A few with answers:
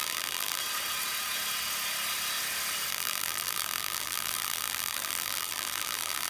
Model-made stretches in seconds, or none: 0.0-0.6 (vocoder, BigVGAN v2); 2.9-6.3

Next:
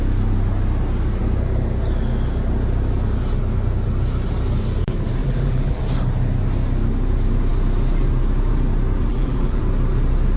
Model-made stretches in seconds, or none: 5.2-5.8 (vocoder, BigVGAN v2); 9.1-9.6

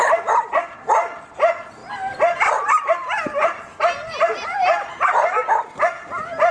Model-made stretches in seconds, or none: none

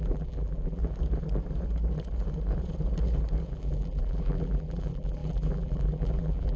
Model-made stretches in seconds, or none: 0.0-0.8 (vocoder, BigVGAN v2); 3.5-6.6

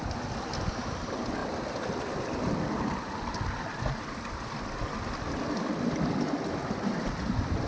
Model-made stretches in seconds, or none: 6.6-7.2 (vocoder, BigVGAN v2)

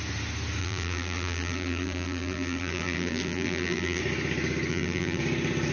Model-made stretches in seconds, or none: 0.6-4.0 (vocoder, BigVGAN v2); 4.7-5.2

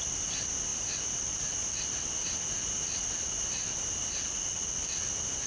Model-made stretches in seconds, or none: none

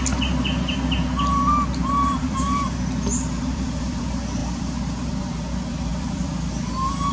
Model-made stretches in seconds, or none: 1.8-4.0 (vocoder, BigVGAN v2); 4.4-5.2; 5.9-6.5